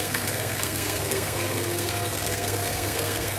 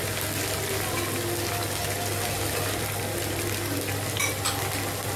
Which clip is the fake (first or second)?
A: first